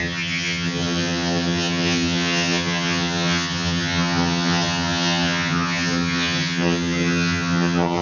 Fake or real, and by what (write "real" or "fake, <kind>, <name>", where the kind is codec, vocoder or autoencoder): fake, vocoder, HiFi-GAN